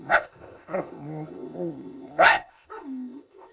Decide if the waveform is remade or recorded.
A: remade